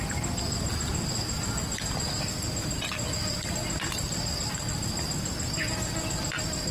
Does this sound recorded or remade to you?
recorded